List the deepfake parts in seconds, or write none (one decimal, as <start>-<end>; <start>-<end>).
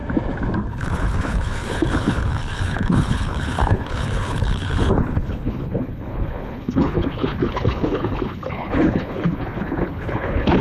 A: 0.7-10.6